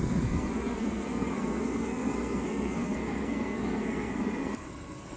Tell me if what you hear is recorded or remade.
remade